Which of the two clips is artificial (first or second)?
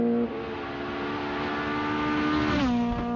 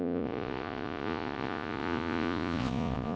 second